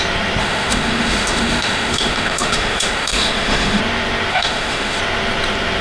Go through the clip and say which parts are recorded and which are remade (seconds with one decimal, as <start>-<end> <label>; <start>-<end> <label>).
0.0-0.4 recorded; 0.4-3.8 remade; 3.8-4.3 recorded; 4.3-5.0 remade; 5.0-5.8 recorded